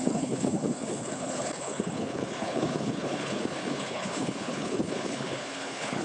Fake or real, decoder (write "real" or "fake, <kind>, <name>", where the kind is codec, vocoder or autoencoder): fake, codec, HILCodec